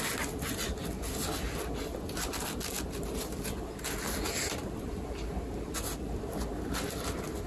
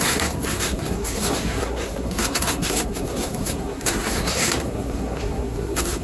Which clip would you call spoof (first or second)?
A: second